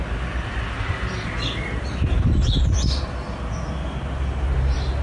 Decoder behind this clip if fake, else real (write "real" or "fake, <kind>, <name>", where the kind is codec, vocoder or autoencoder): real